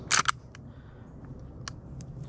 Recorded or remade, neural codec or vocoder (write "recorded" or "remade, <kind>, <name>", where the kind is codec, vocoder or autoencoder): recorded